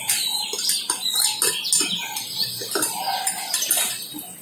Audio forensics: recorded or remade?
recorded